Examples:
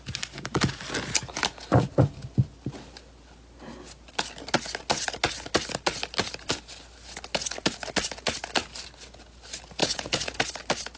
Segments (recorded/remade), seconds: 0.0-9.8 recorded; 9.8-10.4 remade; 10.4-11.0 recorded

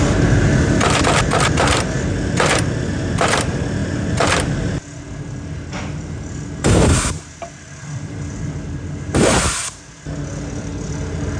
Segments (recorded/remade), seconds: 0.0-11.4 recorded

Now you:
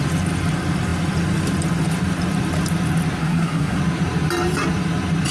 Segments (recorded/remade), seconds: 0.0-3.2 recorded; 3.2-3.8 remade; 3.8-5.3 recorded

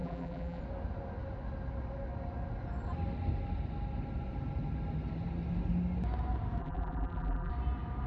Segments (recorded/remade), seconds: 0.0-0.6 remade; 0.6-6.6 recorded; 6.6-7.5 remade; 7.5-8.1 recorded

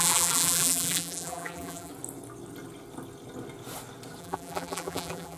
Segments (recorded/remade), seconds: 0.0-1.9 remade; 1.9-4.2 recorded; 4.2-5.4 remade

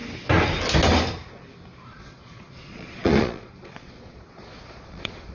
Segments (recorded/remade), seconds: 0.0-1.9 recorded; 1.9-5.3 remade